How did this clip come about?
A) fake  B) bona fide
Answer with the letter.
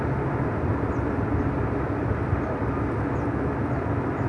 B